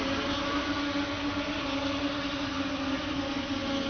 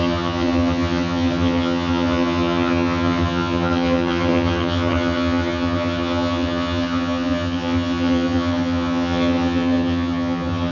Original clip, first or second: first